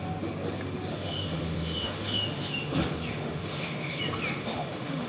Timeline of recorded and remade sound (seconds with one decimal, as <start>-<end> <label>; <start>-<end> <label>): 0.0-0.9 recorded; 0.9-4.0 remade; 4.0-4.4 recorded; 4.4-5.1 remade